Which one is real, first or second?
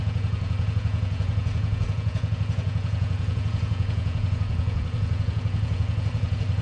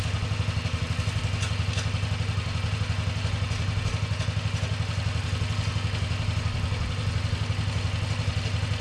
second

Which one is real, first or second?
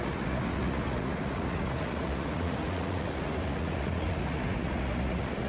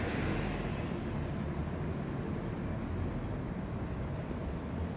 second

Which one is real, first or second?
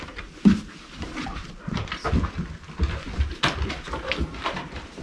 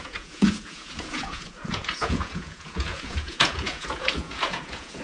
first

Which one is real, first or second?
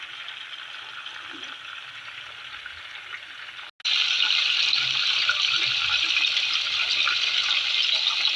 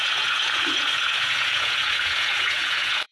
first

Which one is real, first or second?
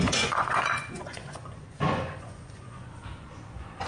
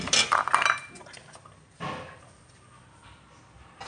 second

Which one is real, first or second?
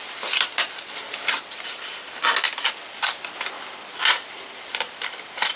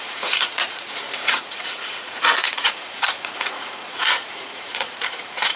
first